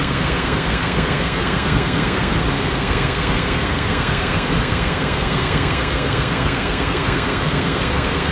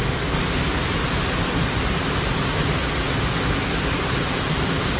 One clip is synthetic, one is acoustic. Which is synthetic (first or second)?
first